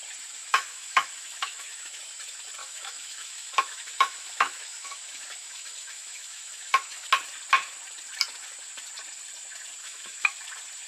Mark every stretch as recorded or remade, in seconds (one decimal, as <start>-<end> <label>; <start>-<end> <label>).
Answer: 0.0-0.4 recorded; 0.4-2.0 remade; 2.0-2.6 recorded; 2.6-7.1 remade; 7.1-9.8 recorded; 9.8-10.4 remade; 10.4-10.9 recorded